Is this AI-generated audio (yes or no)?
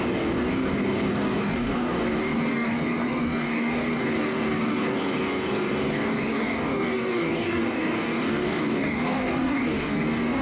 yes